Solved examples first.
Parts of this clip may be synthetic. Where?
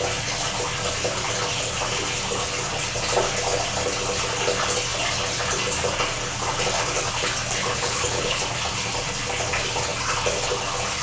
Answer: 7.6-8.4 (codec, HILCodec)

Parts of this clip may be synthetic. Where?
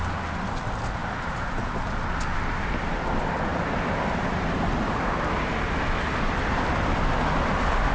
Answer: none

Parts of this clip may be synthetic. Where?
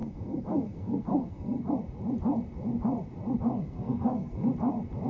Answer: 0.0-1.7 (codec, SNAC); 3.6-4.5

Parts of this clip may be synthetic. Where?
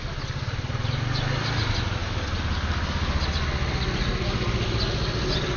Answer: none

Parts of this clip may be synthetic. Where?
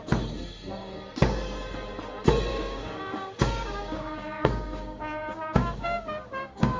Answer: 2.5-6.8 (codec, DAC)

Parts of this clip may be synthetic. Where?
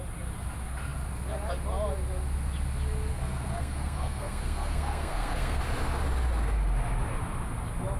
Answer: 3.1-5.6 (codec, SNAC)